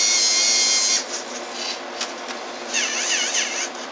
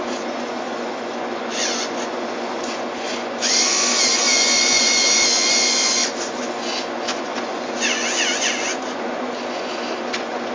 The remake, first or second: second